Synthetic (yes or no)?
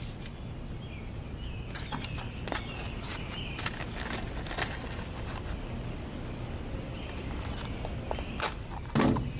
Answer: no